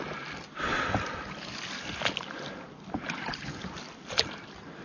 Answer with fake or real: real